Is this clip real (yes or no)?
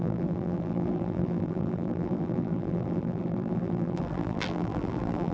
no